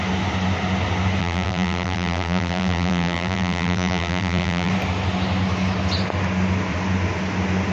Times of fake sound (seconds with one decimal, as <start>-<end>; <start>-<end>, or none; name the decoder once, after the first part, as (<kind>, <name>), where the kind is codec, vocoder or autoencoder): 1.2-4.7 (vocoder, BigVGAN v2)